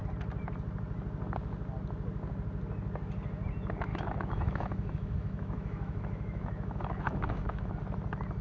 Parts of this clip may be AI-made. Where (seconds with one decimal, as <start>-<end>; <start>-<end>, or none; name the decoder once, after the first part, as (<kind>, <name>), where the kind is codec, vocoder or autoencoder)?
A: 3.9-7.7 (autoencoder, DAC-VAE)